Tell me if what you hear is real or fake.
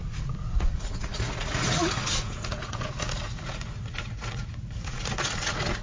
fake